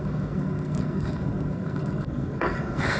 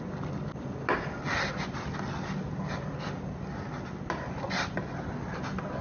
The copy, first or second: first